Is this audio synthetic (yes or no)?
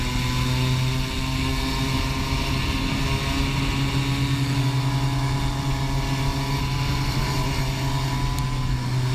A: no